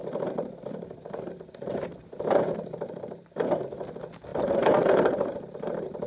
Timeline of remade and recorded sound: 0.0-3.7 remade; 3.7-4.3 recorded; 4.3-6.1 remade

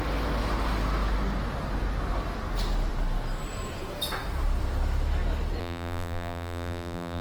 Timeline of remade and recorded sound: 0.0-5.6 recorded; 5.6-7.2 remade

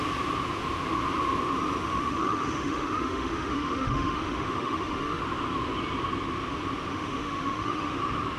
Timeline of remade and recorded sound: 0.0-1.8 recorded; 1.8-5.2 remade; 5.2-6.9 recorded; 6.9-8.0 remade; 8.0-8.4 recorded

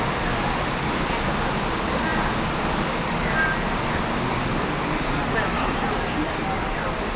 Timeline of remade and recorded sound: 0.0-7.2 recorded

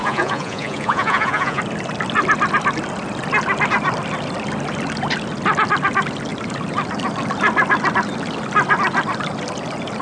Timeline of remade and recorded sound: 0.0-1.6 remade; 1.6-10.0 recorded

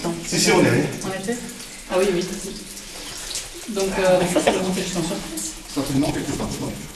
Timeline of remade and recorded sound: 0.0-4.2 recorded; 4.2-4.9 remade; 4.9-5.9 recorded; 5.9-7.0 remade

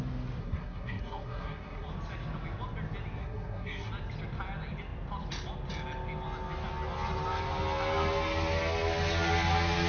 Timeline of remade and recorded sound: 0.0-0.4 recorded; 0.4-1.9 remade; 1.9-3.2 recorded; 3.2-3.9 remade; 3.9-9.9 recorded

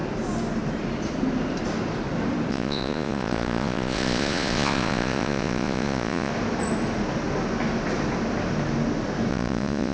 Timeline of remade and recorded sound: 0.0-2.5 recorded; 2.5-6.3 remade; 6.3-9.3 recorded; 9.3-9.9 remade